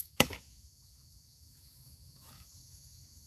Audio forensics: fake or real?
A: fake